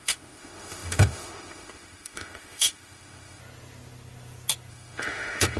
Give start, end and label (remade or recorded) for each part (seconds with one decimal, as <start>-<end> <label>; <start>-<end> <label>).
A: 0.0-3.4 remade; 3.4-4.7 recorded; 4.7-5.6 remade

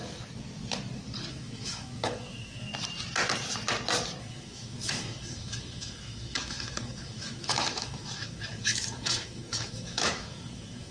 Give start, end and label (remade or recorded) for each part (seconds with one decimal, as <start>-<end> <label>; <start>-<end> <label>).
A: 0.0-1.3 recorded; 1.3-2.7 remade; 2.7-4.2 recorded; 4.2-10.9 remade

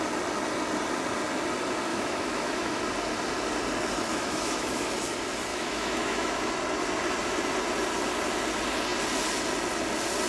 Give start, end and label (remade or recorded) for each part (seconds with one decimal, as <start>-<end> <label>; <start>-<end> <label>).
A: 0.0-1.9 recorded; 1.9-2.8 remade; 2.8-4.1 recorded; 4.1-4.9 remade; 4.9-5.5 recorded; 5.5-6.5 remade; 6.5-10.3 recorded